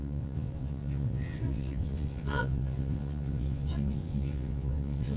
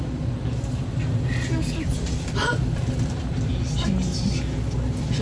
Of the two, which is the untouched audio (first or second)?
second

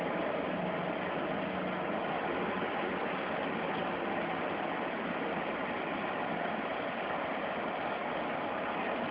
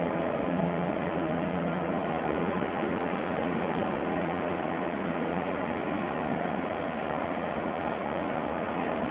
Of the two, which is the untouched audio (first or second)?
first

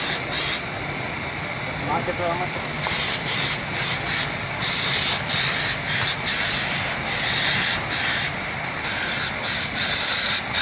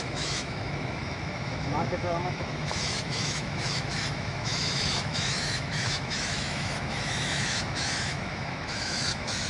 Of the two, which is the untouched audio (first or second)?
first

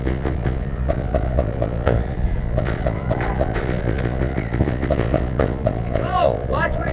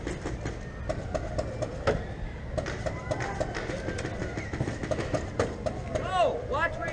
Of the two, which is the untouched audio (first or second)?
second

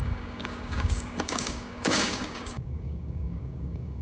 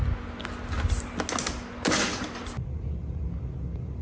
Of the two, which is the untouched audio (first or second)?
second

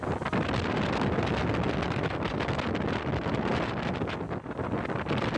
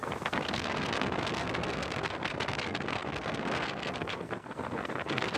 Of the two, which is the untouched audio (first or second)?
first